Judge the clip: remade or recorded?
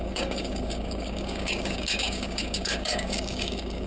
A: remade